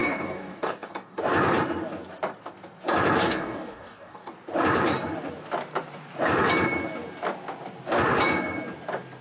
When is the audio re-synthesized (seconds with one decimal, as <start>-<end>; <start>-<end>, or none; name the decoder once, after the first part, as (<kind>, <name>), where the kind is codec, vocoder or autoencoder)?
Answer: 0.0-1.2 (codec, DAC); 3.2-4.3